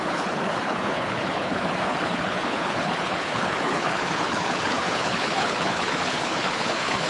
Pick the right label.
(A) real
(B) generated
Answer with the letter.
B